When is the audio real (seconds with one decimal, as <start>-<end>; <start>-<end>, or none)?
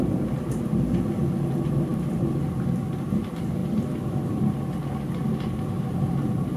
0.0-1.9; 2.5-6.6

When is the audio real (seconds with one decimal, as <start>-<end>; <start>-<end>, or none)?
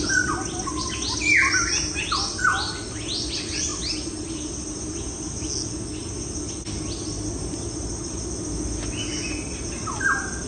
0.0-10.5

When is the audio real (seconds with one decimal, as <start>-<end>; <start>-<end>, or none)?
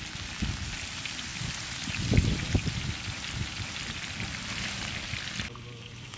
0.0-1.3; 5.0-6.2